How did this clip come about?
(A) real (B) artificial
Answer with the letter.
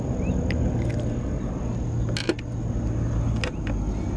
A